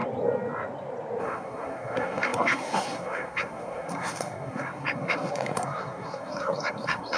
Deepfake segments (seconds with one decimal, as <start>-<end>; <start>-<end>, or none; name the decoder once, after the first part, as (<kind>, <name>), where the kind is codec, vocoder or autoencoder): 1.2-7.2 (codec, SNAC)

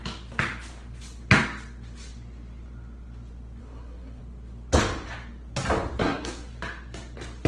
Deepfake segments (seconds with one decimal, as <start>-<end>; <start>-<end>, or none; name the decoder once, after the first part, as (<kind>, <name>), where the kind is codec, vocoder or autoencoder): 3.6-4.2 (codec, SNAC); 6.0-6.5

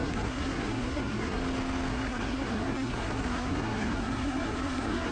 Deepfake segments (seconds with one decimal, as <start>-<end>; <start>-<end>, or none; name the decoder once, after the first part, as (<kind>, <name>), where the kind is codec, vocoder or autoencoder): 0.0-1.4 (codec, SNAC); 1.9-5.1

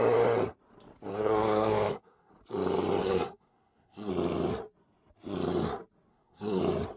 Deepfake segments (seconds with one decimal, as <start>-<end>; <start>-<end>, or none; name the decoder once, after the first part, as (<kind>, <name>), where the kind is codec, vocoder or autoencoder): 1.1-2.3 (codec, SNAC); 3.0-4.1; 6.1-6.6

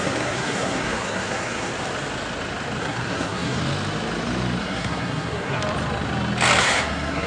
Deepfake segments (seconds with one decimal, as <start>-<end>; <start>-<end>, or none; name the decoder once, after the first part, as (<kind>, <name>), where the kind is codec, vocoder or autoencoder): 0.0-1.7 (codec, SNAC); 2.8-3.6; 4.6-5.6; 6.6-7.3

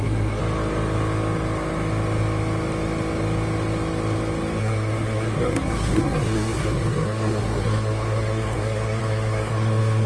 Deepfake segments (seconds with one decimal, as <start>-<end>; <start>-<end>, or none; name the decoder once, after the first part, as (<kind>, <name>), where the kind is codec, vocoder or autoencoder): 0.0-0.4 (codec, SNAC); 4.6-10.1